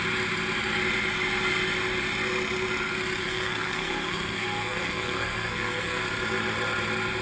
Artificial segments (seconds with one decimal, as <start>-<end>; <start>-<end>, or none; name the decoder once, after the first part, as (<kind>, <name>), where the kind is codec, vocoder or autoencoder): 3.2-6.0 (codec, SNAC)